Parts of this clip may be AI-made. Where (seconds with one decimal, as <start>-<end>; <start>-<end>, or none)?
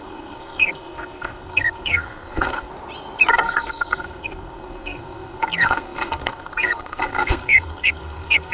0.0-2.7; 3.3-8.5